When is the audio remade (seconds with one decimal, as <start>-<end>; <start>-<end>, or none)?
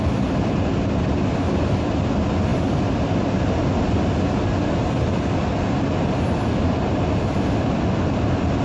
none